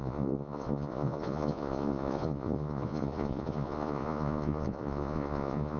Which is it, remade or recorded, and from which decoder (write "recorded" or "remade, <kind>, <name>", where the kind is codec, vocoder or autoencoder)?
remade, vocoder, Vocos